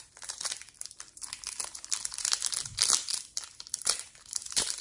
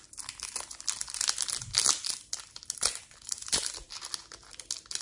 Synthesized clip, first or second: first